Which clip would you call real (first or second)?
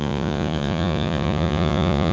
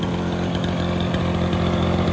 second